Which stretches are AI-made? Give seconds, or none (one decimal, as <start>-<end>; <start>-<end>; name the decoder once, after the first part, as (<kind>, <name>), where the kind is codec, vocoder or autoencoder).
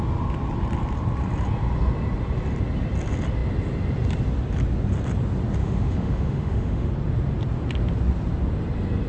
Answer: 5.6-6.9 (autoencoder, DAC-VAE)